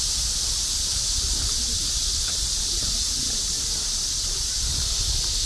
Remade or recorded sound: remade